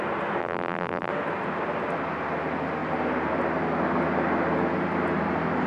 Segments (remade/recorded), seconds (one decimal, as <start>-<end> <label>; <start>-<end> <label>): 0.0-0.4 recorded; 0.4-1.1 remade; 1.1-5.7 recorded